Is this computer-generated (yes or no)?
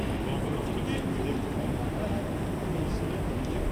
no